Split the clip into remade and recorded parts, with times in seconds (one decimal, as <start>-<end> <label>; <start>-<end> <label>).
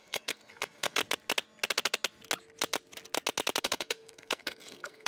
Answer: 0.0-1.0 remade; 1.0-3.6 recorded; 3.6-5.1 remade